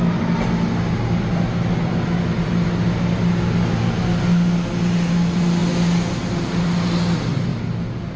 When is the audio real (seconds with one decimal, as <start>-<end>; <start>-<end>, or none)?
0.0-8.2